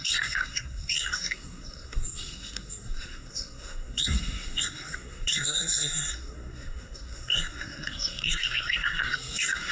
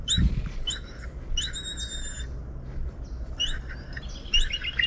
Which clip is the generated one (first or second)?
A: first